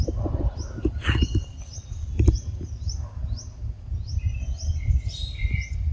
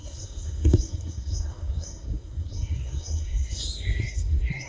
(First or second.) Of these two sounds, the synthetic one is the second